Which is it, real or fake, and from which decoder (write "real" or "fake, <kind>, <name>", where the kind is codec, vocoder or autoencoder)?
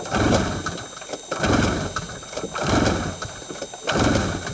real